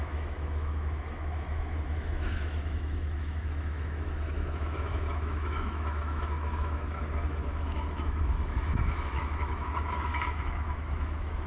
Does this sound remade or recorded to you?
remade